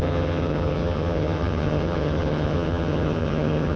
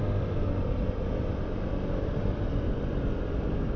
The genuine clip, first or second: second